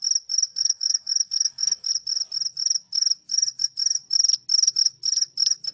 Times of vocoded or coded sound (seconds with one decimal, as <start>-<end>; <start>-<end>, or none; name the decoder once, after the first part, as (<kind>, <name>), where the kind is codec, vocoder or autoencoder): 0.5-1.9 (autoencoder, DAC-VAE)